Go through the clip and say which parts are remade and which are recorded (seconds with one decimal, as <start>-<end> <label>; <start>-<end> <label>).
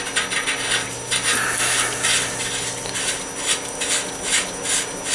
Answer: 0.0-5.1 recorded